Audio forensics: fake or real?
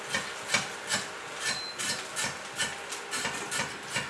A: real